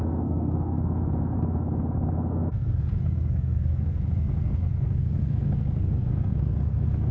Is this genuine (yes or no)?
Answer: no